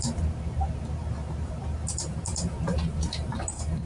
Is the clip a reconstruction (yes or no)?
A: yes